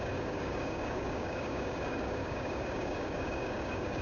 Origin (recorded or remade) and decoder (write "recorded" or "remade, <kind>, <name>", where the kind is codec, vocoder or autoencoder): remade, codec, DAC